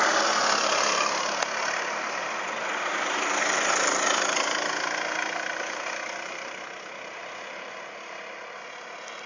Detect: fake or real real